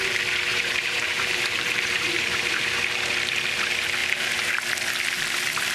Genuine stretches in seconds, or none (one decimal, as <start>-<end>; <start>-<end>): 0.0-0.5; 2.8-4.0; 4.5-5.7